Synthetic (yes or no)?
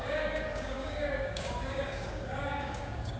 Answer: yes